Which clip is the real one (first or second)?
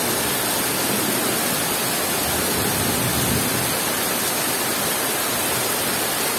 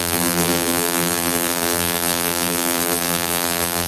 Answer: first